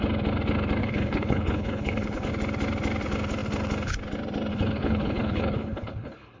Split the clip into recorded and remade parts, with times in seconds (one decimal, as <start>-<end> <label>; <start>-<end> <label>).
0.0-0.8 recorded; 0.8-2.3 remade; 2.3-4.5 recorded; 4.5-6.4 remade